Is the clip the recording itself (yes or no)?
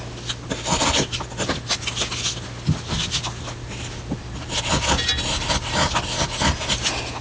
yes